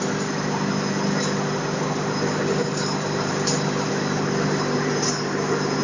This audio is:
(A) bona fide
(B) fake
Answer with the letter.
A